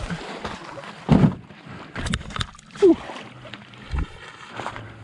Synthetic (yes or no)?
yes